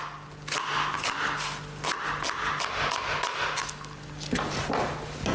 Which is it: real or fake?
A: real